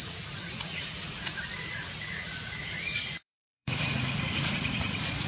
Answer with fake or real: fake